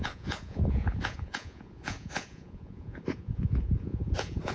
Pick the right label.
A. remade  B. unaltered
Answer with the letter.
A